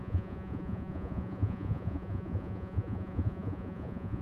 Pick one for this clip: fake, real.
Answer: fake